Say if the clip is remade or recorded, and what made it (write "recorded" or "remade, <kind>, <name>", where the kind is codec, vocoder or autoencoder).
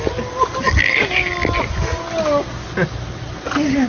recorded